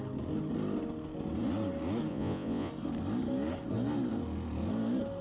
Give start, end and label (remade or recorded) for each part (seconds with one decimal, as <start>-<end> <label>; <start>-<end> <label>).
0.0-2.1 recorded; 2.1-2.7 remade; 2.7-5.2 recorded